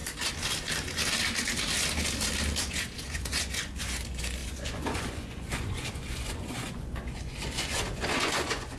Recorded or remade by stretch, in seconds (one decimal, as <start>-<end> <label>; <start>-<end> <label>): 0.0-2.6 recorded; 2.6-8.8 remade